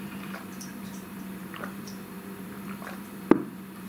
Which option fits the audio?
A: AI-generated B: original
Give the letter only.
A